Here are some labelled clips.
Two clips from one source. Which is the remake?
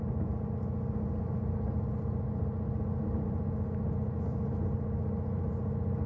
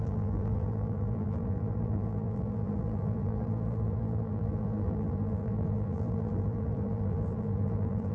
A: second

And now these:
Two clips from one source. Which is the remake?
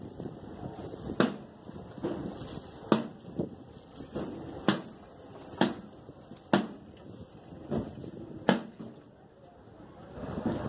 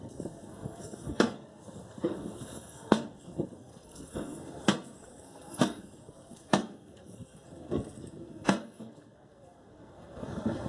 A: second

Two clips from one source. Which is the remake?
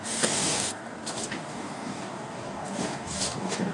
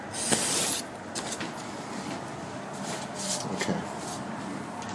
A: first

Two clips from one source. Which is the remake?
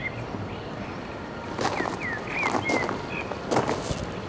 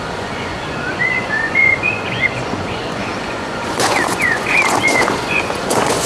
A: second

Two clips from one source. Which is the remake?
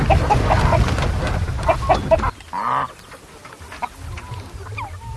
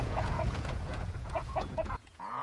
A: second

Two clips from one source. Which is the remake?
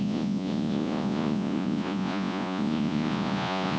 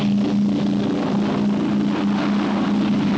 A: first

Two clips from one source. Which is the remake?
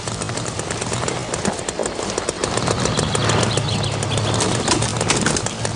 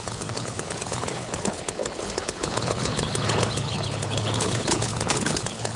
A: second